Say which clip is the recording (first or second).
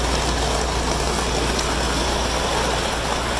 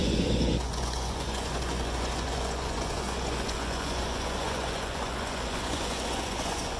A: first